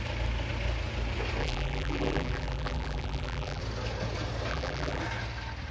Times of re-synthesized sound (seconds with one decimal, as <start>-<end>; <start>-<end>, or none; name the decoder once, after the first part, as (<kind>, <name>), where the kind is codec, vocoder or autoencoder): 1.4-3.6 (vocoder, BigVGAN v2); 4.5-5.0